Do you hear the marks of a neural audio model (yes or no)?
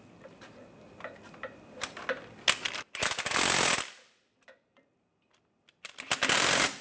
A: no